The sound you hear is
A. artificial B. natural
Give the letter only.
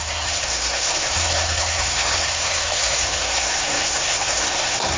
A